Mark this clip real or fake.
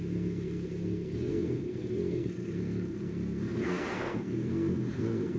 fake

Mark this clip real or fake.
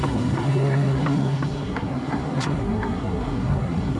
fake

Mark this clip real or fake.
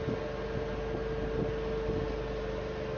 real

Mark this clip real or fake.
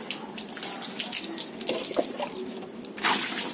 real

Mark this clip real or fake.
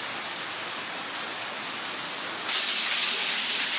real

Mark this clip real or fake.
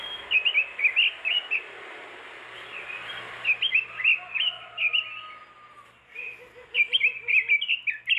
real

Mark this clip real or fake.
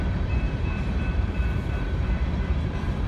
fake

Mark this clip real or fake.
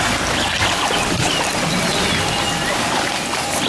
real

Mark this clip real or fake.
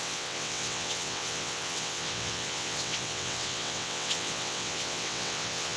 fake